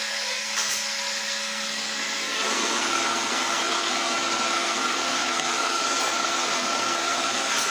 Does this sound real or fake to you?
fake